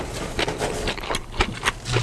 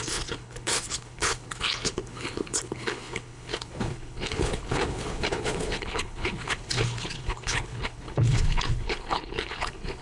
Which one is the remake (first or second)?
second